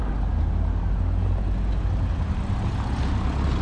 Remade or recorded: recorded